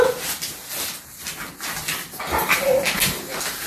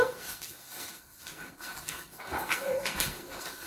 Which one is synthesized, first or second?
second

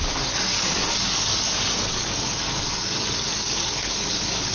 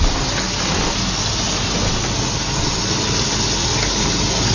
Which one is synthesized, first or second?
first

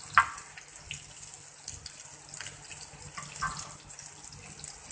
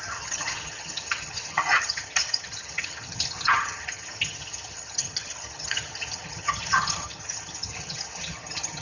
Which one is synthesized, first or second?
second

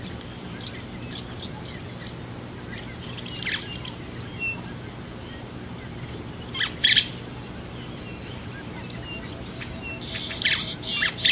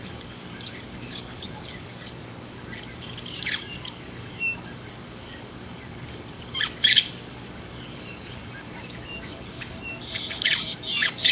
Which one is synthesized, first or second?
second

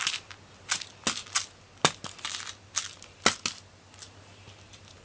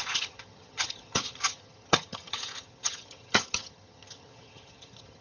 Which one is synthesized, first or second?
second